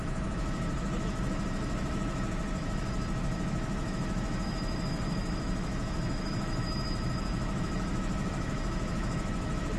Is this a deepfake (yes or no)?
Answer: yes